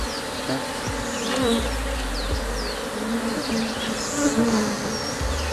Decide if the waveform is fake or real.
real